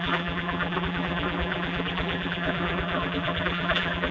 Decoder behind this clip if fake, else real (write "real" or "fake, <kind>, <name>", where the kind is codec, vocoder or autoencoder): fake, vocoder, BigVGAN v2